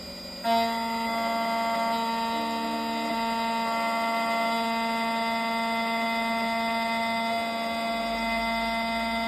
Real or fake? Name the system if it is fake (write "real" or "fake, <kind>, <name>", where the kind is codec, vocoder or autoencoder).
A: real